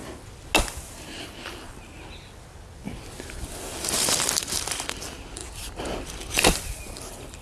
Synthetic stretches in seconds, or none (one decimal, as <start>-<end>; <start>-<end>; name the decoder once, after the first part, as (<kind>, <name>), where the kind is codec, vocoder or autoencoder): 3.4-7.4 (vocoder, BigVGAN v2)